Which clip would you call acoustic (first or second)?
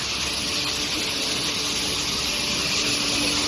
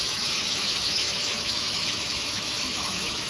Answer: first